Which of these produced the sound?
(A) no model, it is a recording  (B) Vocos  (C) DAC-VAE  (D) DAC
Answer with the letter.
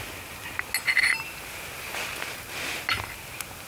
A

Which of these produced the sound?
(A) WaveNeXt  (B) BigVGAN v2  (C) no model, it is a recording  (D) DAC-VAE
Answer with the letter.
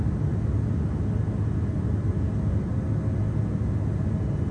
C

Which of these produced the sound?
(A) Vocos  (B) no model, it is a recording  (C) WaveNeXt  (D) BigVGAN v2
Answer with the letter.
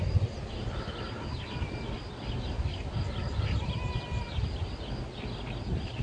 B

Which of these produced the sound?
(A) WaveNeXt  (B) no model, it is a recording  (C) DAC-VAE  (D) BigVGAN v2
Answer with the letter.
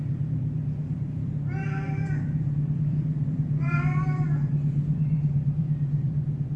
D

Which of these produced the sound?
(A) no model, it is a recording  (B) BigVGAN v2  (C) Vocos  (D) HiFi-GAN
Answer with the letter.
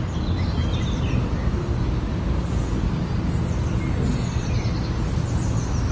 A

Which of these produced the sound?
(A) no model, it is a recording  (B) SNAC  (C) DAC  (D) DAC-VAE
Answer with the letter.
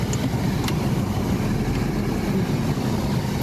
A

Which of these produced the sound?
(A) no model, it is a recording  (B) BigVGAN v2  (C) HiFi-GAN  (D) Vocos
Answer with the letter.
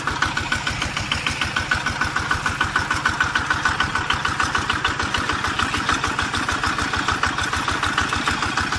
A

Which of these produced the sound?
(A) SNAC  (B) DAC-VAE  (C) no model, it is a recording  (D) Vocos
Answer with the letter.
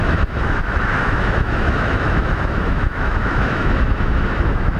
B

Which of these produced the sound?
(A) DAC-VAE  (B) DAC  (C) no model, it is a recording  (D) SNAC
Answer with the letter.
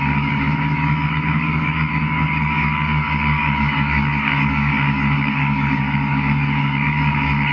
B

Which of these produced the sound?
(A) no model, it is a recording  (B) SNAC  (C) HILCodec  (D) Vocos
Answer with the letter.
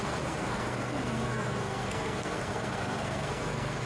B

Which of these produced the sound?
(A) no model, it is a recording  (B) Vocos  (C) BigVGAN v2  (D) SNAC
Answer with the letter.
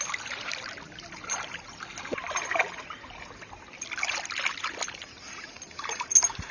A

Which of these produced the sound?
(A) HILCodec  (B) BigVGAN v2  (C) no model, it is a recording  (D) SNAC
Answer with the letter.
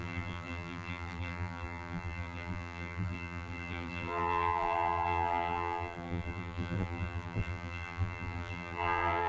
B